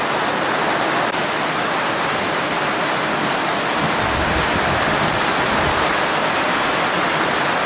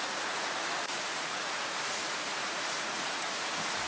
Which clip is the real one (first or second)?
first